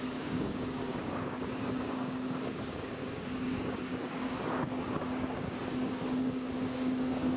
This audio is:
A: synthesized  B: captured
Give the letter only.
A